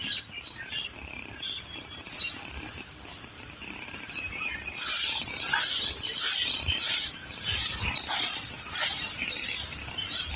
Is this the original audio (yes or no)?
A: no